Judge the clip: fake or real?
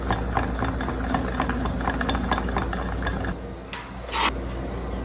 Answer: real